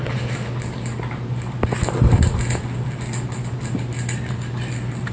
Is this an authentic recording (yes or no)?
yes